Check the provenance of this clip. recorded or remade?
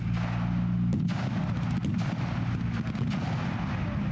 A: recorded